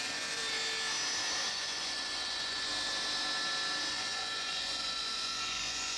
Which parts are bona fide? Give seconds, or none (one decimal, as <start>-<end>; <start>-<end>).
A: 0.4-1.5; 2.7-3.9